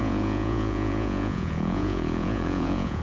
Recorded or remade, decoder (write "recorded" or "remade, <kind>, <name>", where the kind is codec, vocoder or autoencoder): remade, vocoder, Vocos